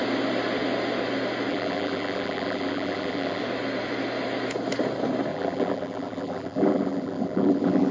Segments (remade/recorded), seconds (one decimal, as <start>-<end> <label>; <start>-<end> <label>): 0.0-1.5 recorded; 1.5-3.4 remade; 3.4-5.3 recorded; 5.3-7.9 remade